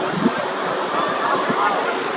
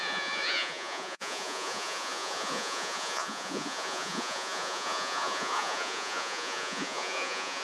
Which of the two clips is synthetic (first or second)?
second